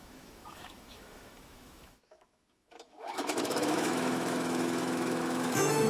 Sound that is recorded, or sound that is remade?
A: remade